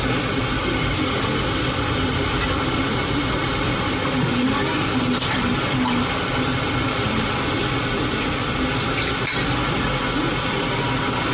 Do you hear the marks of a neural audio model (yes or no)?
no